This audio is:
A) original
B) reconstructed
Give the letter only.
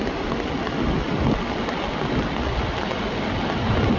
A